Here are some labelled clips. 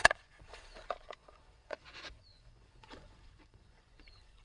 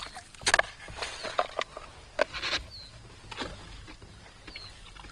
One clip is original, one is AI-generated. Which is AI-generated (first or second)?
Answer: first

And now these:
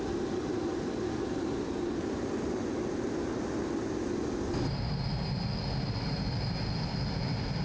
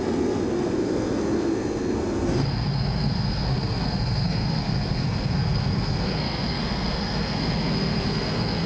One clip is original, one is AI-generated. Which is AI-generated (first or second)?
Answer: second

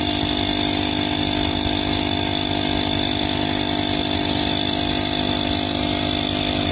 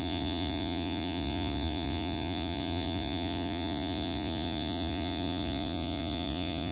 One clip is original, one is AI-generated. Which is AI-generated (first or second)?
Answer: second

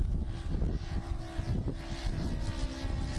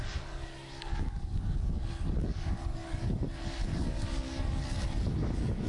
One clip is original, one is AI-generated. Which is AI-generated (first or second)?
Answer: second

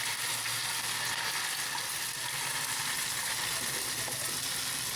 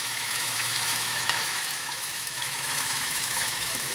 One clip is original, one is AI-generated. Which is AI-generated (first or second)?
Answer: second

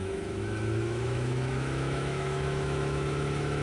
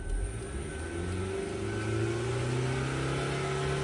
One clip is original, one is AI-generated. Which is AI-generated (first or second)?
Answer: first